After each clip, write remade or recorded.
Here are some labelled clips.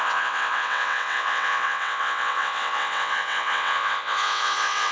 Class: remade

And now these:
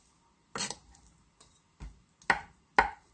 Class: recorded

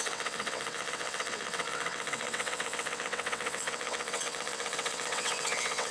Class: remade